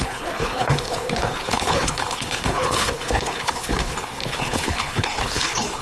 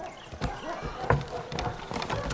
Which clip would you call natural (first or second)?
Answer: second